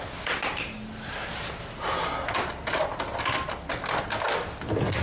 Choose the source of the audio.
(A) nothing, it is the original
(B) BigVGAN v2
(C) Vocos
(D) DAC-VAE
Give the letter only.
A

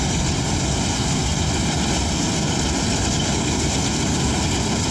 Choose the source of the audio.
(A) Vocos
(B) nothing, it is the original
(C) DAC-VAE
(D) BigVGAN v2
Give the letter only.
B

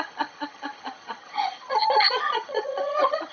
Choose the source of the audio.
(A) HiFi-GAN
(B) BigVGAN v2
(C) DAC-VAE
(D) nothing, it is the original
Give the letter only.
A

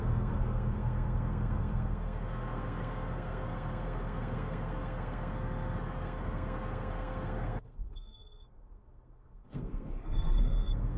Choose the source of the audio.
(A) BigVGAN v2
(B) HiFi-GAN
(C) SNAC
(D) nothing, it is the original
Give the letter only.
C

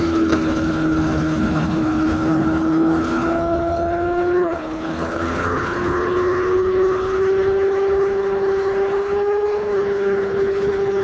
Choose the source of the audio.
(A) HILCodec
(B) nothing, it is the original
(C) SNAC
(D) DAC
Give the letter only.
A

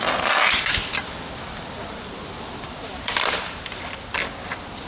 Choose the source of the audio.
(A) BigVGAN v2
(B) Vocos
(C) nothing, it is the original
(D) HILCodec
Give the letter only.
A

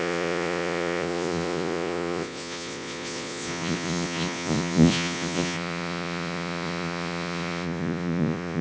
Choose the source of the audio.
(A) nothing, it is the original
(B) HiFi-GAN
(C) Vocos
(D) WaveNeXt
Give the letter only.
C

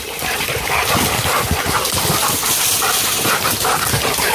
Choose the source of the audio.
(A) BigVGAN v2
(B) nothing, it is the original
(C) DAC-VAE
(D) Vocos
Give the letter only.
A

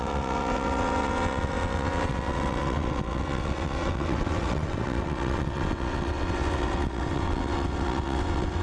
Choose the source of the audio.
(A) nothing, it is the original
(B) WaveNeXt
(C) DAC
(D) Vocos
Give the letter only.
B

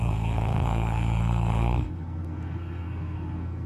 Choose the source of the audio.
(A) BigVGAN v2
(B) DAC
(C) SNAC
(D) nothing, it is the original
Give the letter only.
C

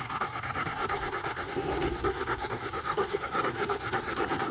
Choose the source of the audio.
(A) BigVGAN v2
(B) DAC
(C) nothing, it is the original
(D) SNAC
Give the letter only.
D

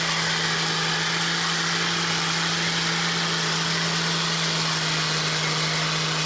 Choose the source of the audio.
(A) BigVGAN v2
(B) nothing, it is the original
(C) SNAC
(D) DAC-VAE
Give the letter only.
B